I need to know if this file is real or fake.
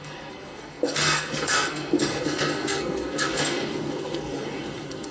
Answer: fake